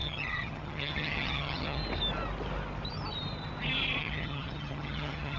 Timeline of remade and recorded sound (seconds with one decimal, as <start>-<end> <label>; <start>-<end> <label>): 0.0-1.8 remade; 1.8-4.0 recorded; 4.0-5.4 remade